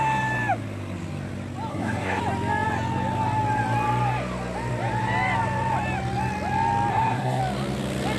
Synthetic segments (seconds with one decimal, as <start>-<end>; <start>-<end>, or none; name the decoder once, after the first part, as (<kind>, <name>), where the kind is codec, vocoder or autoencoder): 1.7-2.2 (codec, SNAC); 6.9-7.4